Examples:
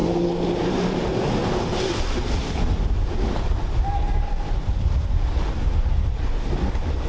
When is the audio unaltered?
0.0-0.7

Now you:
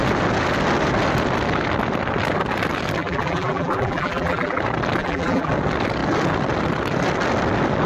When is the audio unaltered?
0.0-3.0; 4.6-5.0; 5.5-7.9